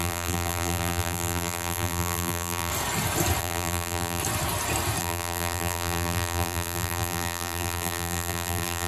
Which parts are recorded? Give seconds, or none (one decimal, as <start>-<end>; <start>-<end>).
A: 2.7-3.4; 4.2-5.0